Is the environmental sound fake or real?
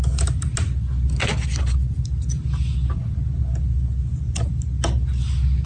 real